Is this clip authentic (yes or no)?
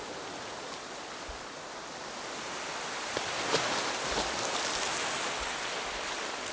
yes